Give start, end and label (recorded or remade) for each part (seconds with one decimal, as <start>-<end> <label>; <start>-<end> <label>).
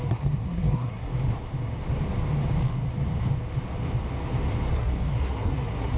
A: 0.0-1.1 remade; 1.1-4.7 recorded; 4.7-6.0 remade